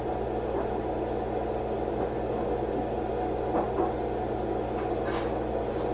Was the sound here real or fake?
real